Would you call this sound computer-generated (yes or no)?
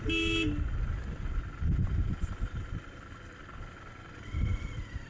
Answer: no